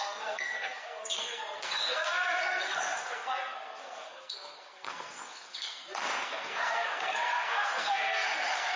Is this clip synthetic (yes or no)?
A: yes